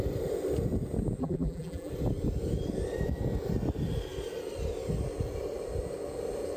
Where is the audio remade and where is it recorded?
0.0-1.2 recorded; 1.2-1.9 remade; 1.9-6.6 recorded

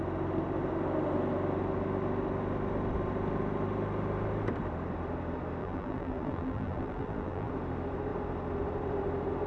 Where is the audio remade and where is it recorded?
0.0-5.6 recorded; 5.6-7.5 remade; 7.5-9.5 recorded

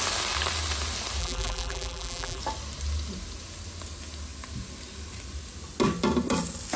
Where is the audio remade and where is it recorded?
0.0-1.2 recorded; 1.2-2.4 remade; 2.4-6.8 recorded